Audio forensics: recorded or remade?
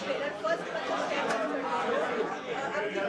remade